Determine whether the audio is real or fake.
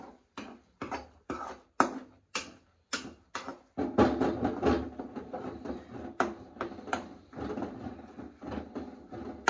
real